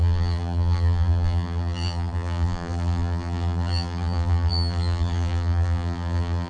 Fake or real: fake